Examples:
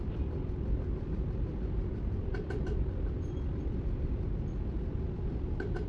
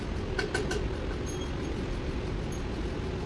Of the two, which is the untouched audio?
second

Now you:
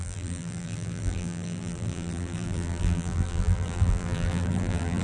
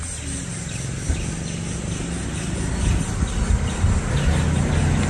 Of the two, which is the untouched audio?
second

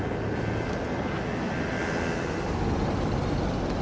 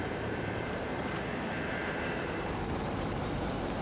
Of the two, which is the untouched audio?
first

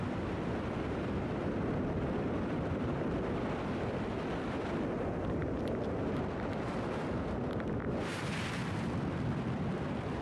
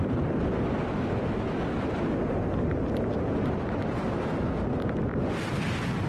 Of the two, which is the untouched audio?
second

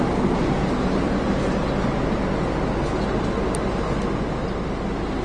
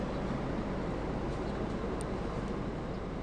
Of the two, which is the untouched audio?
first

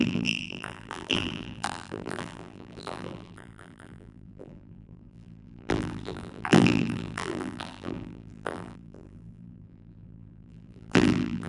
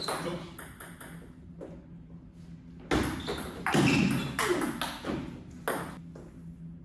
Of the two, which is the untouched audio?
second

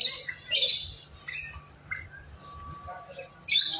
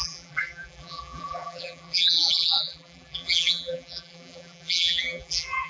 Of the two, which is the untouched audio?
first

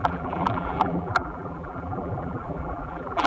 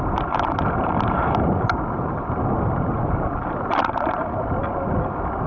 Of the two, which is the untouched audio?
second